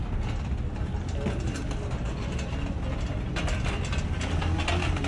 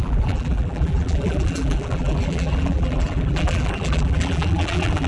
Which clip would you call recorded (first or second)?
first